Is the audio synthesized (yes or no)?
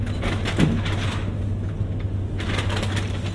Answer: no